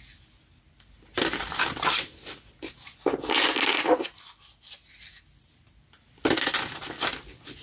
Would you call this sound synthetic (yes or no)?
no